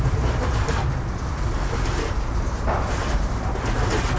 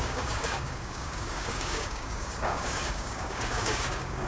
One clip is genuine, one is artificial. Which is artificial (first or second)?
second